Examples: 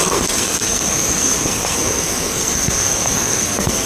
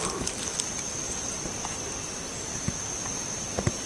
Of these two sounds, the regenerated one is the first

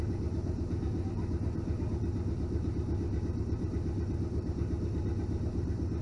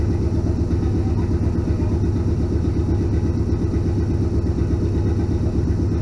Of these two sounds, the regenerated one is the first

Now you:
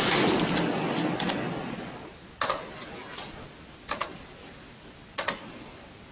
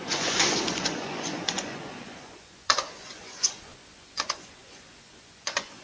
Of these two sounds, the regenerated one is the second